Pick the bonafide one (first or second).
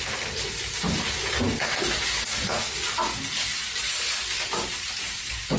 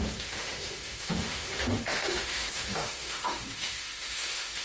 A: first